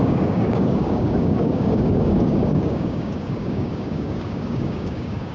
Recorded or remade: remade